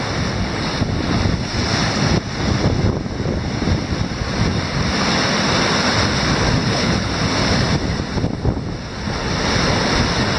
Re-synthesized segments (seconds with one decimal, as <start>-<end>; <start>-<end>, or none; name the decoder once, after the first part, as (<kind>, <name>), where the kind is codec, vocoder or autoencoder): 6.6-7.1 (codec, HILCodec)